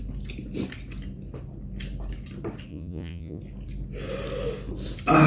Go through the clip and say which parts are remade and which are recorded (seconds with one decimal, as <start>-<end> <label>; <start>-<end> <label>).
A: 0.0-2.7 recorded; 2.7-3.4 remade; 3.4-5.3 recorded